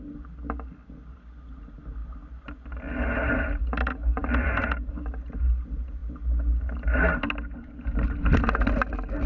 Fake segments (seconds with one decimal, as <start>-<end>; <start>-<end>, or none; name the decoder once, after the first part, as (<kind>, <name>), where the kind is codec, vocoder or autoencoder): none